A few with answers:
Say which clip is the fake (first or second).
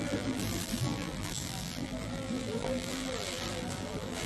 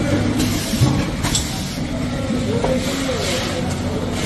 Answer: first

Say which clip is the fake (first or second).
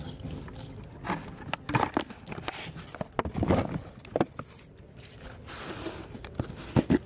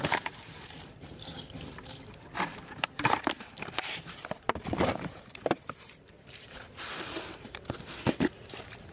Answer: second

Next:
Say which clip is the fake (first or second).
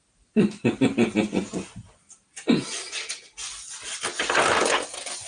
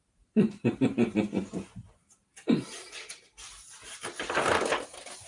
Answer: second